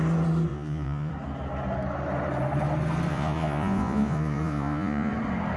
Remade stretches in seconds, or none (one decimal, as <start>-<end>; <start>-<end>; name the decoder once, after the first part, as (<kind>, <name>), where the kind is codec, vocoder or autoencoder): 0.5-1.1 (vocoder, Vocos); 3.1-5.1